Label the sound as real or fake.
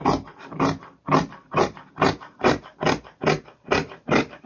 fake